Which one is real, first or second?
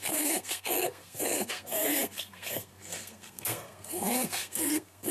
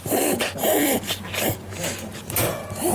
second